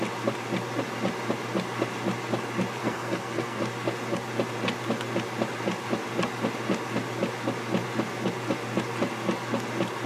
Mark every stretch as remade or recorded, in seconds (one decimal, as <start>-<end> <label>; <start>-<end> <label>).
0.0-2.8 recorded; 2.8-3.6 remade; 3.6-10.1 recorded